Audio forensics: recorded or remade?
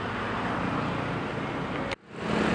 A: recorded